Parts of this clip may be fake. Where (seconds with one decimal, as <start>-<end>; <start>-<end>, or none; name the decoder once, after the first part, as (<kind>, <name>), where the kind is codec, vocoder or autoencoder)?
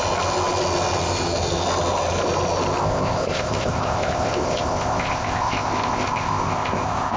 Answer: 2.8-7.2 (codec, ZipCodec)